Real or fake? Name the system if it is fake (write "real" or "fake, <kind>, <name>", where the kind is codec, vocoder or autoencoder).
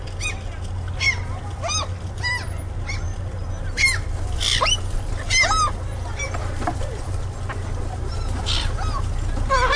real